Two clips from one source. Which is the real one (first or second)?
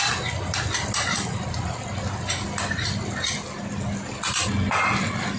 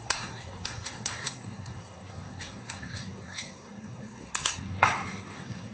first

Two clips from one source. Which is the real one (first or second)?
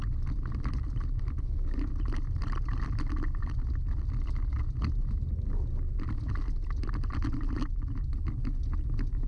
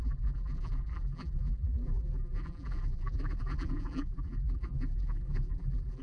first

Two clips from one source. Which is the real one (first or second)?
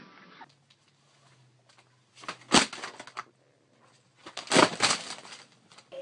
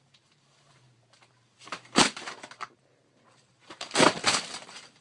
first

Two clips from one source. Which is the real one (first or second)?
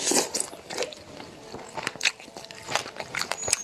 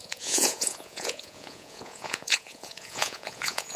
first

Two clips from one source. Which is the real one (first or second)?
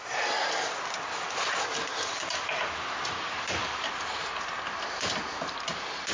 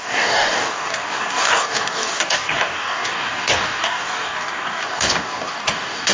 first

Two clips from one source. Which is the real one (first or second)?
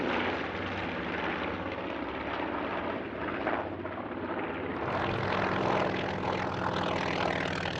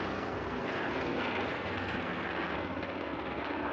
first